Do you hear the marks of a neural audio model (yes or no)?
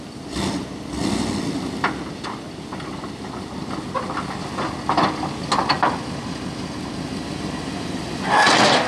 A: no